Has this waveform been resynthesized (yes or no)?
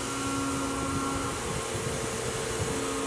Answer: no